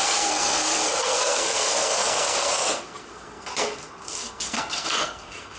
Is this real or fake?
fake